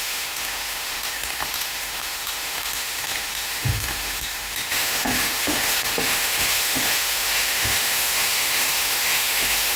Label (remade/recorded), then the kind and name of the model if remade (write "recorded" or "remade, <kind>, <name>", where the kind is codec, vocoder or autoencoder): remade, autoencoder, DAC-VAE